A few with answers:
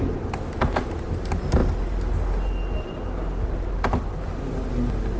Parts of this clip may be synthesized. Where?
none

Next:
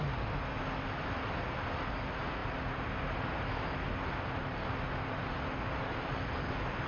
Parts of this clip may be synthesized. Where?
none

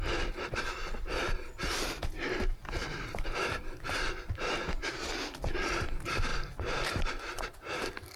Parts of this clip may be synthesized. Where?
2.8-4.8 (vocoder, BigVGAN v2); 6.3-7.7

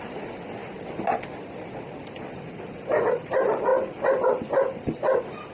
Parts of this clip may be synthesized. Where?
none

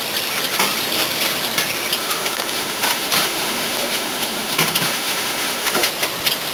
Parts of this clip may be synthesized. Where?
2.0-5.9 (autoencoder, DAC-VAE)

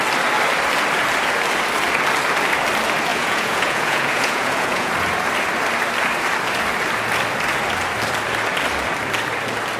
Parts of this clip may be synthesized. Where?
3.1-4.9 (vocoder, Vocos)